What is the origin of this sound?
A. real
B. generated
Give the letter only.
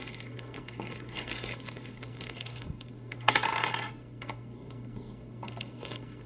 B